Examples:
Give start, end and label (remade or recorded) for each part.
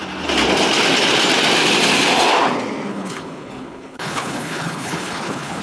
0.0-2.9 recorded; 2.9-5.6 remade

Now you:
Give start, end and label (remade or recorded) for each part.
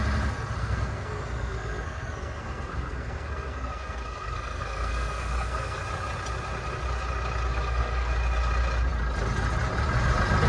0.0-0.6 recorded; 0.6-5.8 remade; 5.8-7.5 recorded; 7.5-8.1 remade; 8.1-10.5 recorded